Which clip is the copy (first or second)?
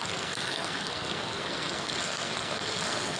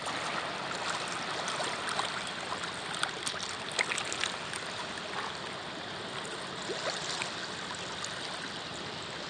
first